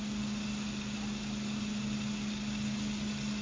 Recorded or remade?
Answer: recorded